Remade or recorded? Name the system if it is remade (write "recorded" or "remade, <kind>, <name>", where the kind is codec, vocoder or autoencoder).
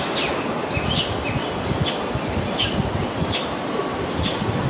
recorded